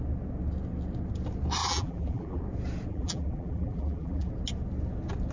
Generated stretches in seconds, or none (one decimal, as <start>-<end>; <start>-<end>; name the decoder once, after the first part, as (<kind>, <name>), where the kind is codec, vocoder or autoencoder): 1.6-2.4 (vocoder, BigVGAN v2); 2.9-4.3